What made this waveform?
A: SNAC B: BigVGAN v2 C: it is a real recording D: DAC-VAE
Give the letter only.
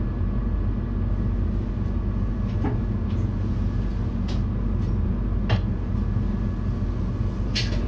C